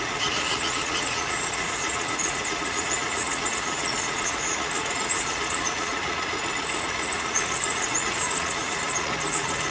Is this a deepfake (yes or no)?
yes